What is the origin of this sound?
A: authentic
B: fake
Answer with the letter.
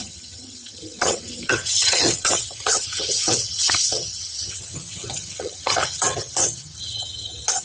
B